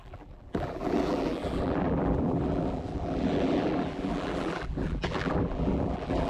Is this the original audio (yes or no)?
no